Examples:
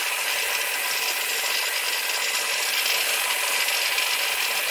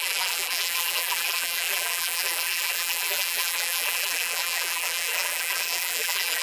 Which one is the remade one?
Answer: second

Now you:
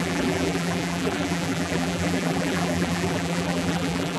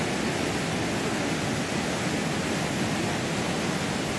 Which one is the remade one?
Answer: first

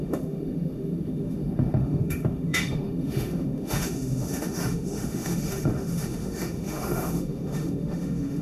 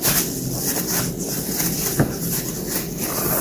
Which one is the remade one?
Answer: first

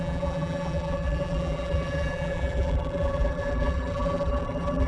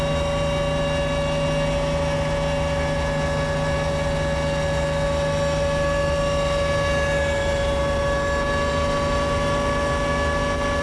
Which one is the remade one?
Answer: first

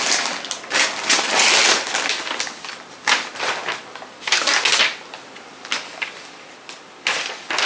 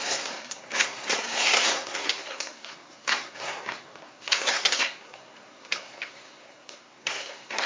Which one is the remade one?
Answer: second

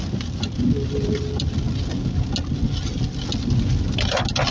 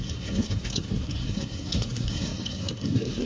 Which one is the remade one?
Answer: second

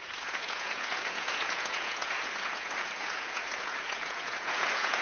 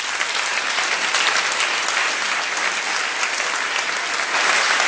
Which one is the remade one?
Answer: first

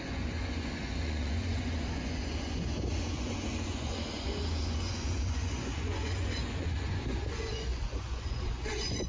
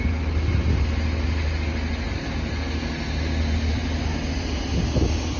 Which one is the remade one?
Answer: first